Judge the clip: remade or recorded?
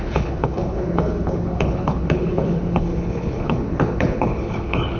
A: remade